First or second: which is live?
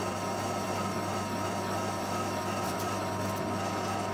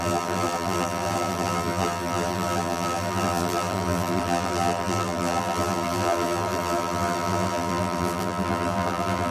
first